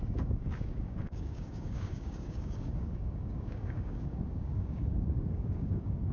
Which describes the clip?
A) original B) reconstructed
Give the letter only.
B